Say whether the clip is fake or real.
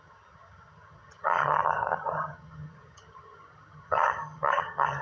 fake